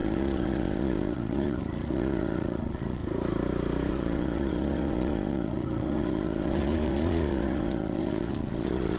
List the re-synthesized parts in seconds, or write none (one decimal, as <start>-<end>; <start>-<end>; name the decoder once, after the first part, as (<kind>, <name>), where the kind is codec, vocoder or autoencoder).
0.0-3.0 (vocoder, Vocos); 3.9-9.0